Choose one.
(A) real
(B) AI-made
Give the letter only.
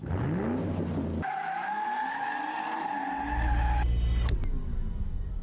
A